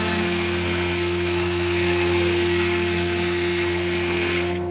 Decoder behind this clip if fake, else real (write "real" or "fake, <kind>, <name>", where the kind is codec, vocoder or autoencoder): fake, codec, SNAC